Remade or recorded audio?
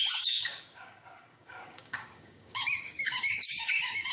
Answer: remade